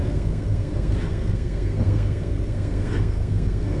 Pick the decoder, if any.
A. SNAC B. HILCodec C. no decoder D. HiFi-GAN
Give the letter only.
A